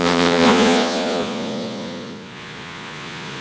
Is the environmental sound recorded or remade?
remade